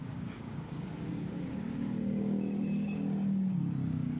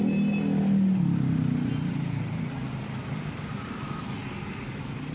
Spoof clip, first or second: first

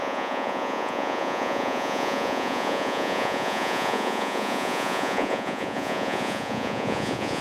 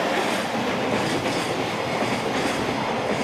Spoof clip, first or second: first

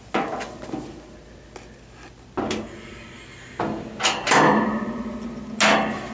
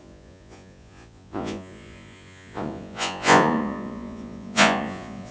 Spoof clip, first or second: second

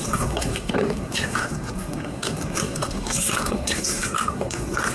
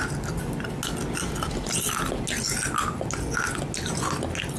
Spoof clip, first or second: first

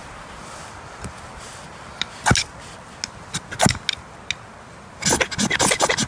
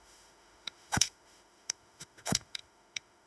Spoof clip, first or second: second